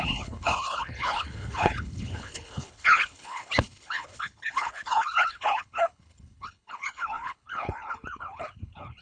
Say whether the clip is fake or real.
fake